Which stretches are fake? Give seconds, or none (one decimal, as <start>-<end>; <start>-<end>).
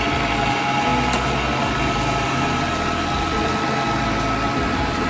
none